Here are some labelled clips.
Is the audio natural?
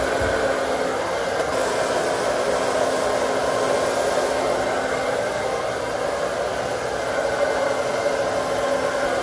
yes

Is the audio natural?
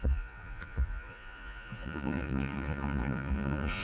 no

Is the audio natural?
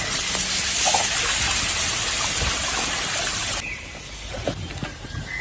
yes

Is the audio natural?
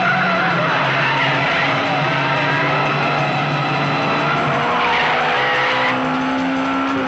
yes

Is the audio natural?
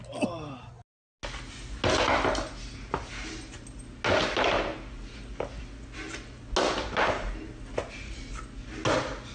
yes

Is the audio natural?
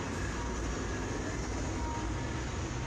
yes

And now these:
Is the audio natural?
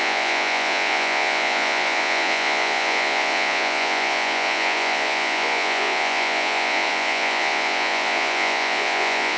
no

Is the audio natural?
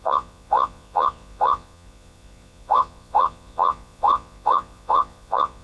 no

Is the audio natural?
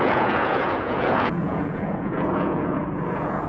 no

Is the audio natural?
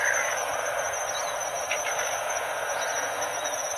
no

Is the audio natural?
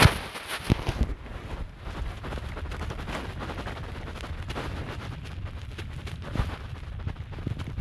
yes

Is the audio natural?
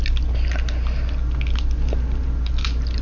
yes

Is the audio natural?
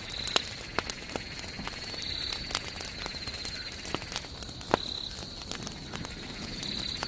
yes